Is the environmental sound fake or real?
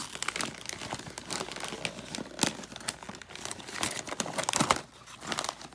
real